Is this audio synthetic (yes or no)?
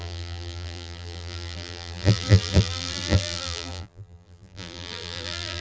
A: yes